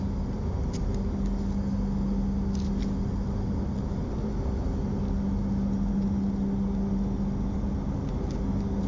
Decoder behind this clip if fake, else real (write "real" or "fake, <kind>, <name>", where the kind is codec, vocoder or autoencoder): real